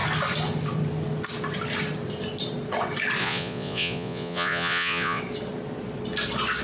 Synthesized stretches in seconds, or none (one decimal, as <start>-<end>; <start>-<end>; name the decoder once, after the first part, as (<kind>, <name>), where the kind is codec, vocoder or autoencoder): 3.2-5.2 (vocoder, Vocos)